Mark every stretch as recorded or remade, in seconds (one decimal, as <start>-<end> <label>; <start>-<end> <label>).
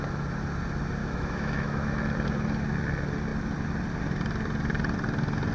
0.0-1.0 recorded; 1.0-2.0 remade; 2.0-5.5 recorded